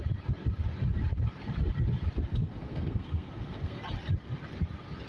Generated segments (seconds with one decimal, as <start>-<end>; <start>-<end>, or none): 2.3-3.8